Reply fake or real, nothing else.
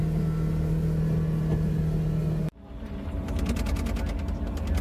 real